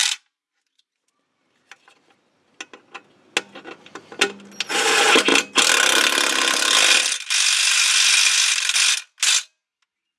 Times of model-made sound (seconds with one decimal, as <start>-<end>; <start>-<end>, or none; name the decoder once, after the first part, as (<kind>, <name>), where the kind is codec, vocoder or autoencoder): 0.0-2.5 (vocoder, BigVGAN v2)